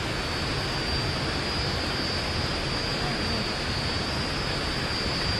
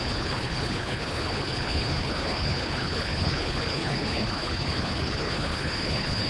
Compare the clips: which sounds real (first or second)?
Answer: first